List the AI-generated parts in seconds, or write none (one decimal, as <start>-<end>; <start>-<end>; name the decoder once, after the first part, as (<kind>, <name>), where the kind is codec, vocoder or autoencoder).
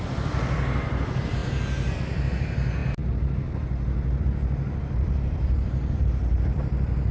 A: 0.0-1.4 (vocoder, BigVGAN v2); 1.9-2.8; 4.2-7.1